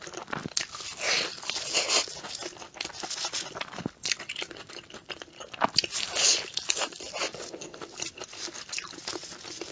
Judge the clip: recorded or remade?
recorded